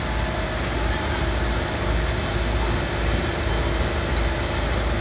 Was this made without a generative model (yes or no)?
yes